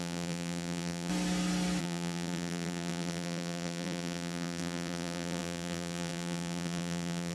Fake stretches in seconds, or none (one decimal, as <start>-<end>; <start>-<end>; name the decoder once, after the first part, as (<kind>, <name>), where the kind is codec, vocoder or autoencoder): 0.0-1.1 (vocoder, BigVGAN v2); 1.8-7.3